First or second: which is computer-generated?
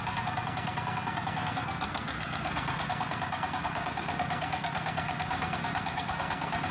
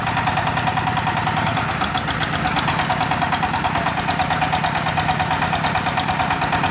first